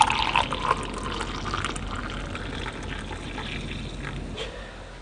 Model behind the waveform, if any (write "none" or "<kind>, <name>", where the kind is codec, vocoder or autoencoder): none